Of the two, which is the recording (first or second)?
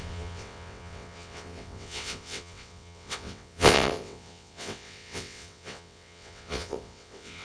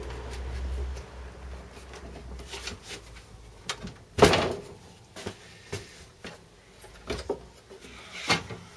second